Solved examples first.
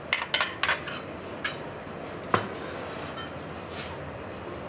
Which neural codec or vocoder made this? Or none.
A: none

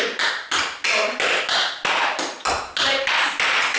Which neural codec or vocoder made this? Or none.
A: none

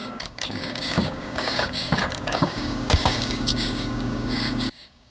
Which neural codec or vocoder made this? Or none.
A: codec, DAC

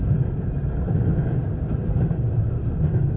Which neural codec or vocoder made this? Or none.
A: none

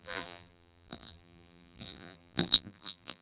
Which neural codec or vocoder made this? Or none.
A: vocoder, BigVGAN v2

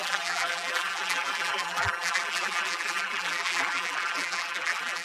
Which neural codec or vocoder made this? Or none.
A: vocoder, BigVGAN v2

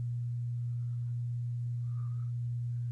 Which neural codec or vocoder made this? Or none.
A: none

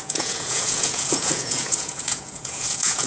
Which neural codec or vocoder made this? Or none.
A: vocoder, Vocos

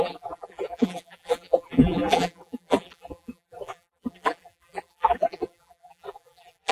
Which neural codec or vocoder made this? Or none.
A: vocoder, BigVGAN v2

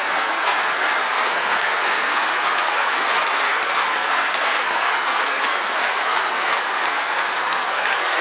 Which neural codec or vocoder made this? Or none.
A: codec, SNAC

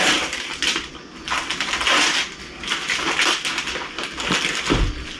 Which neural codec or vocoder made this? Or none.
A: none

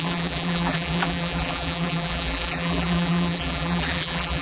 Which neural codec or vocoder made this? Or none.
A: vocoder, BigVGAN v2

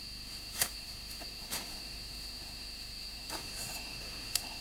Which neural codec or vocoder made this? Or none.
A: autoencoder, DAC-VAE